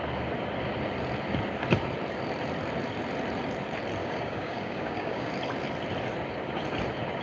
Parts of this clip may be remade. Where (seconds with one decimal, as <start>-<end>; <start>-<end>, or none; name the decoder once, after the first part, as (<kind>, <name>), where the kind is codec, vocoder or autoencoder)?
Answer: 4.0-5.3 (codec, DAC)